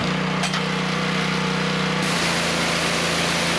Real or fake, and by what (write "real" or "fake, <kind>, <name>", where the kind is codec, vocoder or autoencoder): real